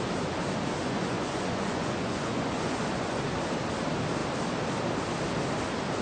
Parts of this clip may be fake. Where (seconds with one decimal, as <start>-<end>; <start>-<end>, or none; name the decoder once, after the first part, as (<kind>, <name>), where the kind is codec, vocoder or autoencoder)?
0.8-3.2 (vocoder, Vocos)